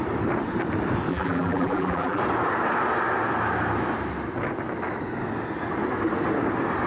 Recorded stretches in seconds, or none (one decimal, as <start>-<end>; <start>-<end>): 0.0-1.1; 2.2-6.9